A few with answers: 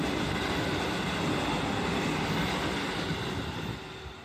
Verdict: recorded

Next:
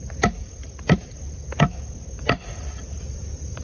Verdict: recorded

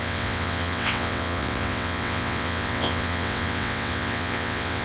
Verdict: remade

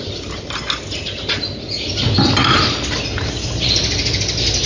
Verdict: recorded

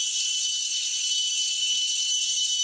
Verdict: remade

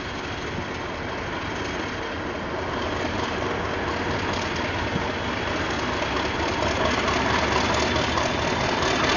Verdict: recorded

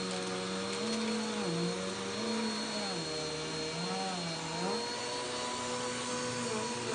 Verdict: recorded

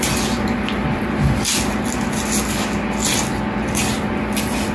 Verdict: recorded